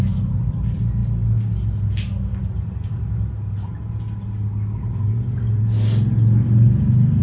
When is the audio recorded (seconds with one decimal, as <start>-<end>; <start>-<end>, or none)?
0.0-7.2